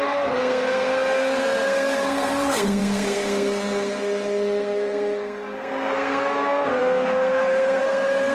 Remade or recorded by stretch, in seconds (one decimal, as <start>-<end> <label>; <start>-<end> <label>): 0.0-8.3 remade